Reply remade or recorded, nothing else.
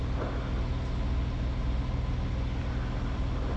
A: recorded